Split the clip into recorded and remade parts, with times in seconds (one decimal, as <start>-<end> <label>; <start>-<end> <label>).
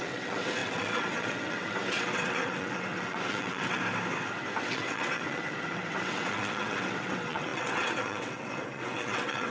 0.0-3.8 remade; 3.8-4.6 recorded; 4.6-9.5 remade